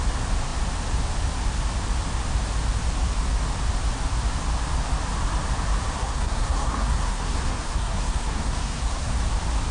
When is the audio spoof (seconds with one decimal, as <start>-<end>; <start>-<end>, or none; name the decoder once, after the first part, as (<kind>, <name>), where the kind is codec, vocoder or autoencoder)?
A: 6.0-9.1 (codec, SNAC)